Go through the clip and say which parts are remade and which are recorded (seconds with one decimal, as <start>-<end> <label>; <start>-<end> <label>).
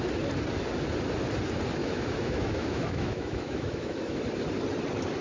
0.0-1.8 recorded; 1.8-4.2 remade; 4.2-5.2 recorded